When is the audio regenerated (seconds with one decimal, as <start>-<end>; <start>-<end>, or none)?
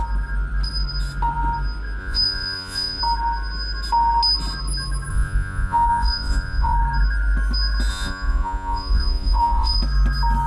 2.0-3.0; 5.1-6.8; 7.9-9.8